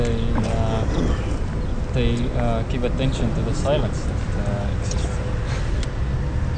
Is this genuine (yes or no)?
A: yes